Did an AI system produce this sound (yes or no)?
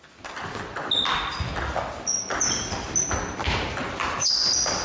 no